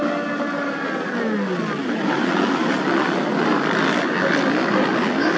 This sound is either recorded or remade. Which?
recorded